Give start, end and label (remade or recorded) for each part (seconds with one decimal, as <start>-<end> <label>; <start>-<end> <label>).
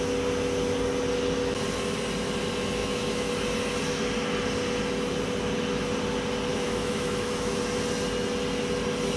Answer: 0.0-2.8 recorded; 2.8-3.3 remade; 3.3-6.5 recorded; 6.5-7.6 remade; 7.6-9.2 recorded